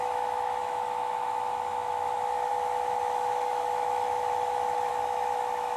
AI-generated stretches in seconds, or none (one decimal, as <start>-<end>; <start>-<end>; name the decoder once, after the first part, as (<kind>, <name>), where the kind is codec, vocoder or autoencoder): 0.0-5.8 (autoencoder, DAC-VAE)